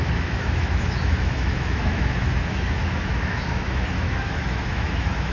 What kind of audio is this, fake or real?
fake